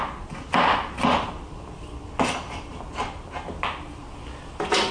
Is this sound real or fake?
real